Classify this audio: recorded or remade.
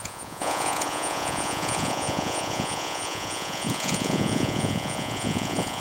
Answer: remade